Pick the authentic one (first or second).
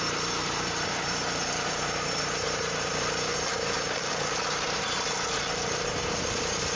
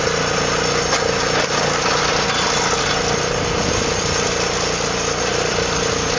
second